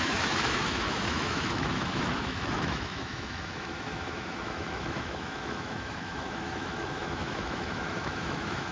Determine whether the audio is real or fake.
fake